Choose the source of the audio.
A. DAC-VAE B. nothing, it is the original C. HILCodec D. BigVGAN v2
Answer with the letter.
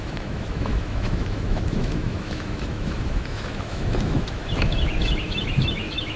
A